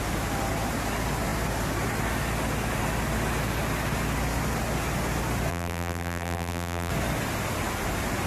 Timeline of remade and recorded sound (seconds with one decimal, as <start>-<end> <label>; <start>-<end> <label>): 0.0-5.5 recorded; 5.5-6.9 remade; 6.9-8.3 recorded

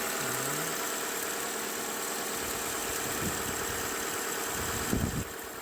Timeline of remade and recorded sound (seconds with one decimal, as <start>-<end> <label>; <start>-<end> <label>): 0.0-5.6 recorded

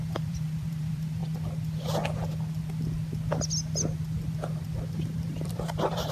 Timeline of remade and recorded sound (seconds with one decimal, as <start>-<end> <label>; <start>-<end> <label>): 0.0-1.2 remade; 1.2-4.9 recorded; 4.9-6.1 remade

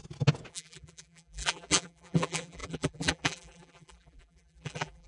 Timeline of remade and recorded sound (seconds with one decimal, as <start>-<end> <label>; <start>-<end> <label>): 0.0-0.5 recorded; 0.5-5.1 remade

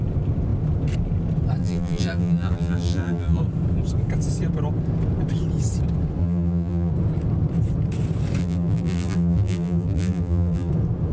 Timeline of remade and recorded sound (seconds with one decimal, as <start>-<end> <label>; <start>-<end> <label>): 0.0-1.6 recorded; 1.6-3.4 remade; 3.4-6.2 recorded; 6.2-6.9 remade; 6.9-8.4 recorded; 8.4-10.7 remade; 10.7-11.1 recorded

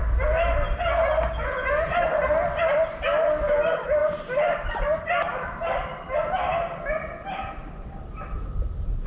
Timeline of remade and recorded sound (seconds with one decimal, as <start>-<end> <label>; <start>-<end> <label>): 0.0-4.0 recorded; 4.0-5.7 remade; 5.7-9.1 recorded

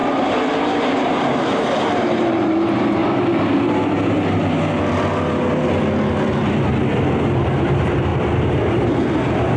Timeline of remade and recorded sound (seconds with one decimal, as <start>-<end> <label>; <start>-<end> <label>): 0.0-0.6 recorded; 0.6-3.0 remade; 3.0-7.6 recorded; 7.6-8.1 remade; 8.1-9.6 recorded